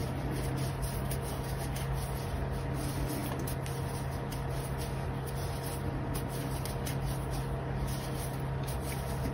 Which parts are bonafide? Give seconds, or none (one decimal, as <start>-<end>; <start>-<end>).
0.7-9.3